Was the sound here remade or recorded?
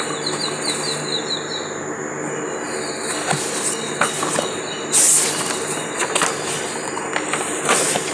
recorded